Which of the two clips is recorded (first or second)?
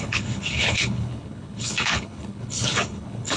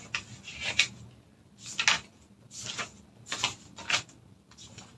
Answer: second